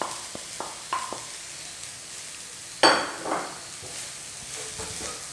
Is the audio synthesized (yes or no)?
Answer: no